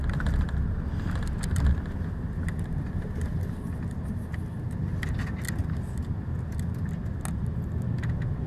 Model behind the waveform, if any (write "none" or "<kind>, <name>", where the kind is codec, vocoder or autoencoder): none